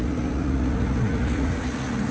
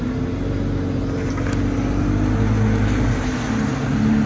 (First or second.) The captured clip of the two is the second